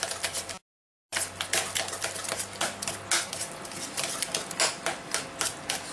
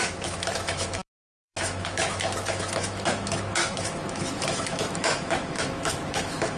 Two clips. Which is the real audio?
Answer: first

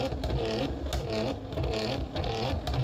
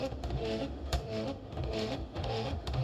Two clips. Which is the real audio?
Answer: first